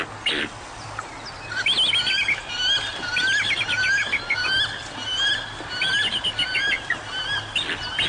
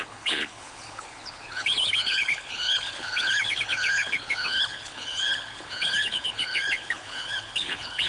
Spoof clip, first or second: second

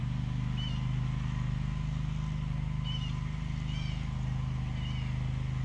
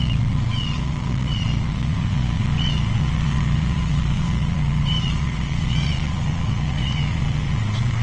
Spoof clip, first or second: second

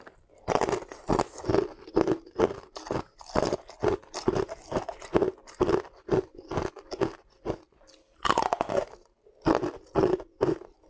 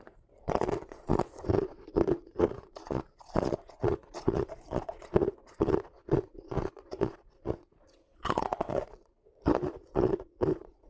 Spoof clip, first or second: second